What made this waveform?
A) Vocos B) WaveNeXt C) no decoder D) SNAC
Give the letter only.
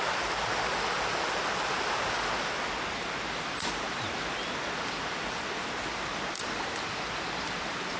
C